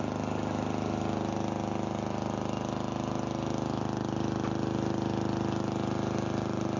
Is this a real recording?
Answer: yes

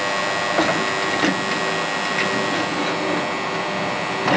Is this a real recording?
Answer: yes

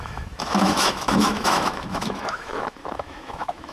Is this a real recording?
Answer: no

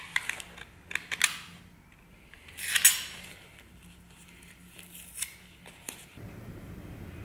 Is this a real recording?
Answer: yes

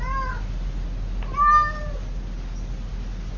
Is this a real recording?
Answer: yes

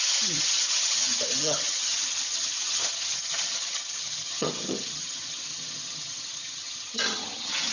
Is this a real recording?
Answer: no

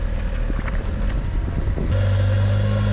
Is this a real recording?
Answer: yes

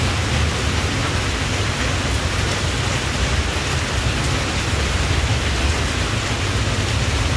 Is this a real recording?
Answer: yes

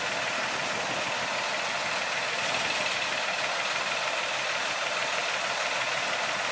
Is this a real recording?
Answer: yes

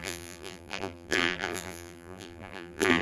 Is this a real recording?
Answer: no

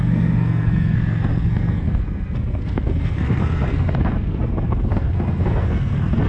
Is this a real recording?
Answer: no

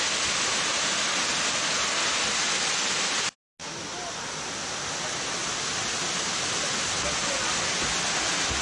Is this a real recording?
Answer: yes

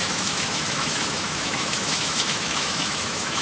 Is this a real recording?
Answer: no